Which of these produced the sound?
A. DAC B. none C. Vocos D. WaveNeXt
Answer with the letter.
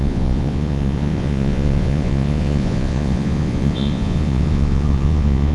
C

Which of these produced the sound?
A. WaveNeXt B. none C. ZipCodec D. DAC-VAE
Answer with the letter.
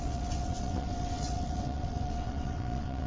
A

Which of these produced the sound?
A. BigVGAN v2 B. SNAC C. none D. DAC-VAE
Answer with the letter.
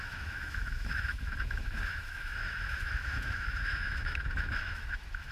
D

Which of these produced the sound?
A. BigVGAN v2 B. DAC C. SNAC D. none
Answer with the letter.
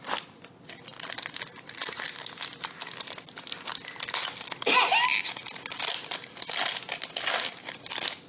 D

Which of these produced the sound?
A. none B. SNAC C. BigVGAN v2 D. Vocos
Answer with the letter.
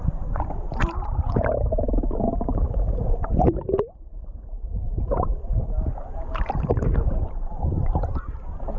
C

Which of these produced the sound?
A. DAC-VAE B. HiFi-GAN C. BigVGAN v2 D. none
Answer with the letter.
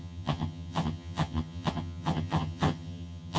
B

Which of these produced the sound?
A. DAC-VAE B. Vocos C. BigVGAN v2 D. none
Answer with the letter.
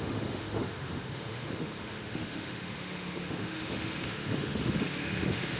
A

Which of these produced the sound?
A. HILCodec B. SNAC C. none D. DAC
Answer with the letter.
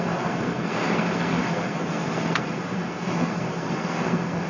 B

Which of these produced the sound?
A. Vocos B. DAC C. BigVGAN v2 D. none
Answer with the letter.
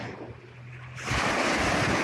D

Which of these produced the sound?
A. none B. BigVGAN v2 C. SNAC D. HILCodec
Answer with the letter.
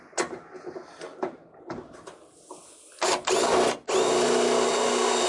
A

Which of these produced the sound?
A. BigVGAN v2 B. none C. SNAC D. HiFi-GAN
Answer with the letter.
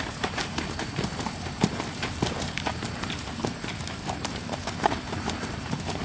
A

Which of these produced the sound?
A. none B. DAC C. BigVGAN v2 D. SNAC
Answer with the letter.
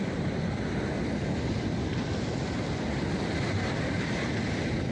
A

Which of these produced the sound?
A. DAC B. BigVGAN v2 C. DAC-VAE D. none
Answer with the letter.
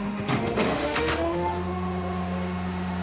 C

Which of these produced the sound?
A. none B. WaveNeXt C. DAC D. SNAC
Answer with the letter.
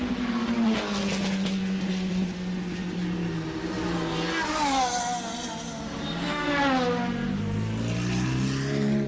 A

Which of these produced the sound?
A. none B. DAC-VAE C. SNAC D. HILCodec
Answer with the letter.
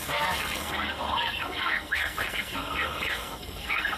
C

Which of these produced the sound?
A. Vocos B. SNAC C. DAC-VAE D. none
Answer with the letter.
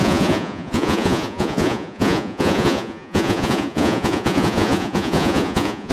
A